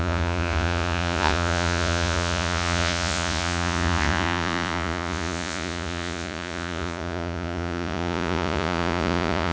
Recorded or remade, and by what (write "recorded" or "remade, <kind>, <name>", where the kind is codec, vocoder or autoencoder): remade, vocoder, Vocos